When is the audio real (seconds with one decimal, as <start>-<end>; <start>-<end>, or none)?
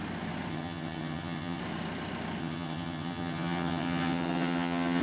0.0-0.5; 1.6-2.4